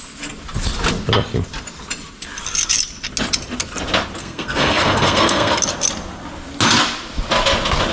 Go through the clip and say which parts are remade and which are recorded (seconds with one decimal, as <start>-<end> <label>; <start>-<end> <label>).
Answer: 0.0-4.2 recorded; 4.2-5.6 remade; 5.6-7.9 recorded